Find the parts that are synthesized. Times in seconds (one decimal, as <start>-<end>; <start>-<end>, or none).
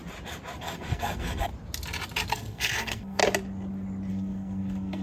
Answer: 0.6-1.5; 2.3-3.2; 4.1-5.0